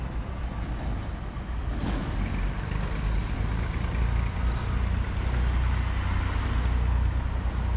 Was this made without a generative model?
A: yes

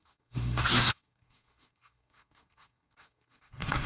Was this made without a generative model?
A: no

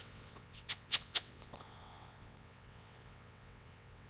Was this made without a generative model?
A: no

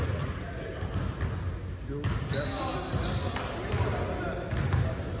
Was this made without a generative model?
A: yes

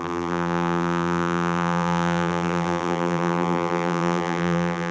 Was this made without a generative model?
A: no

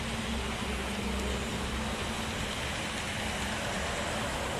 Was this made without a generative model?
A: yes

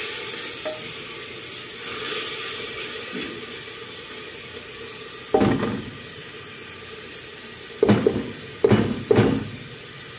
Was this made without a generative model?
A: yes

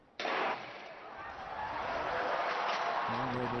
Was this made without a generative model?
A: no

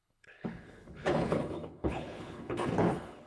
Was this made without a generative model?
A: no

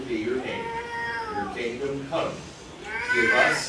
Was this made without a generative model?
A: yes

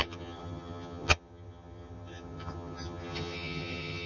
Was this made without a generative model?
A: no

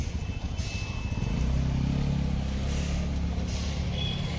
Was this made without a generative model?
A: yes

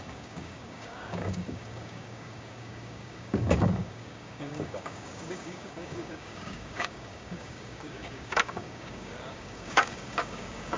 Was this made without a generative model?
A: no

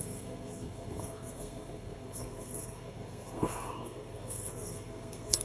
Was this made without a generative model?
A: no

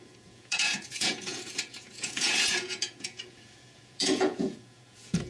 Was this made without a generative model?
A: no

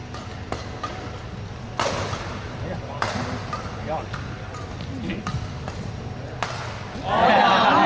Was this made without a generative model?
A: yes